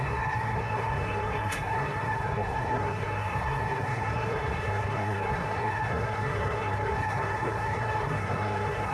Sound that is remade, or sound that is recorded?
remade